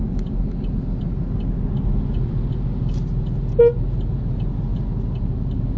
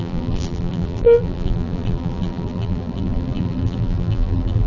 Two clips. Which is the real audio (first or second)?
first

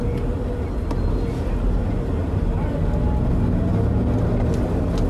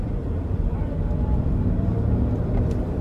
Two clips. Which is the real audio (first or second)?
first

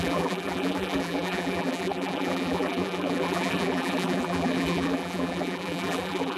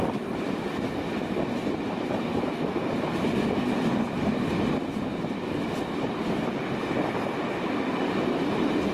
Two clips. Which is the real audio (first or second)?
second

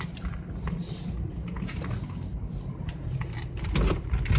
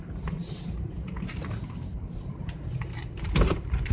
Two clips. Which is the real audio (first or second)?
first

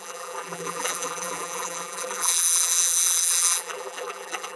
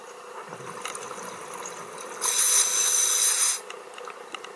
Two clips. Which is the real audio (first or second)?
second